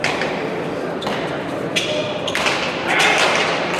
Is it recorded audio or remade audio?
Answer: recorded